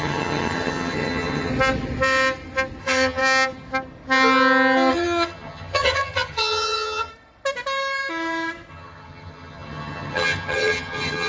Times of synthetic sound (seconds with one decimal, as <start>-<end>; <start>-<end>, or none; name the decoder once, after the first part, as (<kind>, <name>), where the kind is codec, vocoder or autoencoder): 0.0-1.5 (vocoder, HiFi-GAN); 2.8-3.2; 4.9-7.1; 8.7-11.3